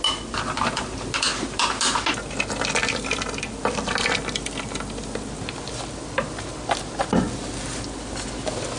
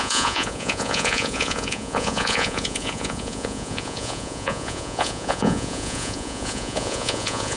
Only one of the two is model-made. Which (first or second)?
second